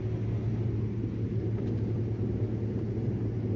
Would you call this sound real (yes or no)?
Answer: yes